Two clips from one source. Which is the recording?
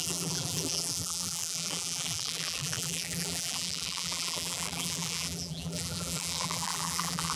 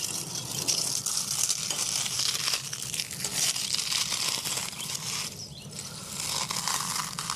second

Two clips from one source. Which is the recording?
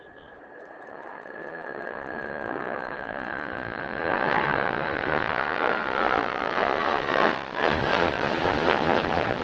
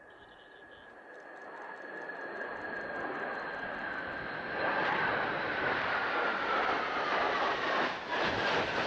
second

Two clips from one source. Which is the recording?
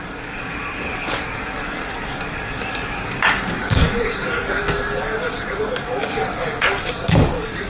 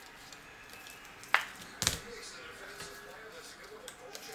second